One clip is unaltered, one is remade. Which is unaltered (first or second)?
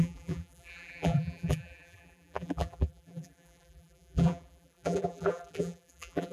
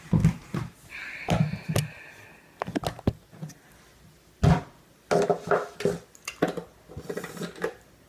second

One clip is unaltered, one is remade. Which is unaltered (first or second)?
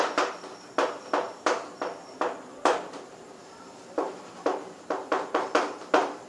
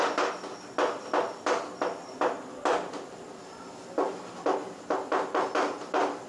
second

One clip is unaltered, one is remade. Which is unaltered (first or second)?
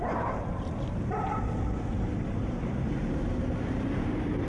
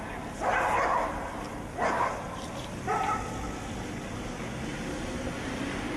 second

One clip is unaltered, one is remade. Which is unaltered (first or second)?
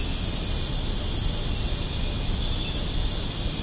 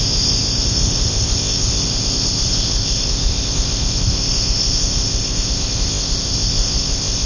first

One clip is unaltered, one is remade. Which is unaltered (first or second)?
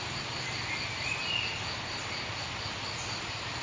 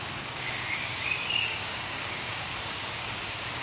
first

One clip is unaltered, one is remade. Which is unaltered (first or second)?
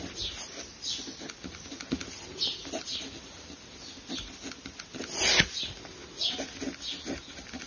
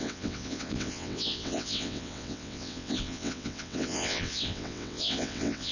first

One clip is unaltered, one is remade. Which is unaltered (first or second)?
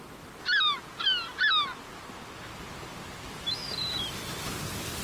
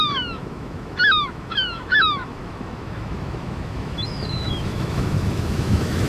first